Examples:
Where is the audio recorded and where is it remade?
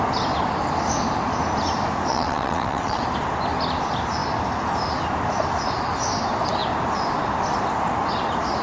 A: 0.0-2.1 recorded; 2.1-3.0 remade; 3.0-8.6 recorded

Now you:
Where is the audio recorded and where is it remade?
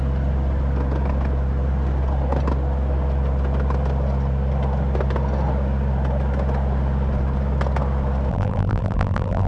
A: 0.0-8.3 recorded; 8.3-9.5 remade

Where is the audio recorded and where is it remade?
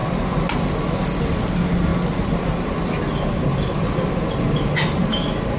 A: 0.0-5.6 recorded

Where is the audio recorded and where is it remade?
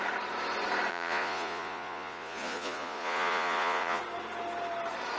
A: 0.0-0.9 recorded; 0.9-4.0 remade; 4.0-5.2 recorded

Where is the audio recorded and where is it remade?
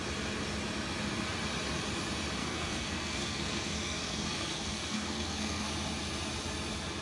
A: 0.0-2.4 recorded; 2.4-5.7 remade; 5.7-7.0 recorded